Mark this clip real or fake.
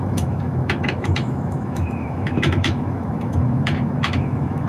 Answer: fake